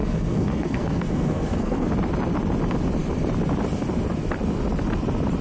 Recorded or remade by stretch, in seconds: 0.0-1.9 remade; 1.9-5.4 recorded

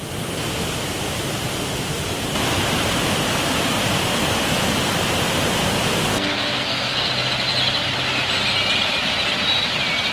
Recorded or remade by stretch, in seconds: 0.0-6.1 recorded; 6.1-7.1 remade; 7.1-10.1 recorded

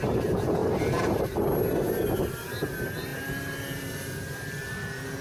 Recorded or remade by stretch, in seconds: 0.0-5.2 recorded

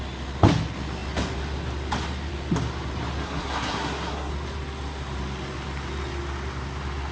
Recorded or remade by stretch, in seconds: 0.0-3.2 recorded; 3.2-4.3 remade; 4.3-7.1 recorded

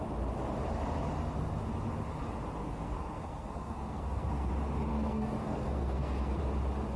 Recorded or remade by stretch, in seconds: 0.0-2.6 recorded; 2.6-4.5 remade; 4.5-4.9 recorded; 4.9-6.4 remade; 6.4-7.0 recorded

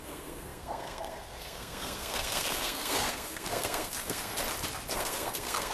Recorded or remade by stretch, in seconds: 0.0-4.3 remade; 4.3-4.9 recorded; 4.9-5.7 remade

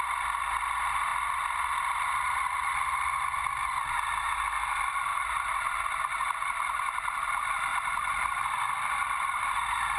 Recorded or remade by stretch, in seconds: 0.0-10.0 recorded

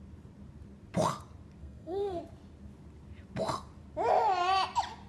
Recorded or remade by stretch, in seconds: 0.0-1.6 recorded; 1.6-2.2 remade; 2.2-5.1 recorded